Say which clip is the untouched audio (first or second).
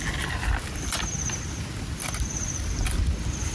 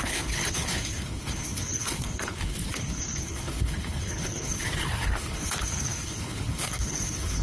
first